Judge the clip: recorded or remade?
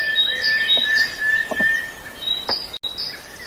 recorded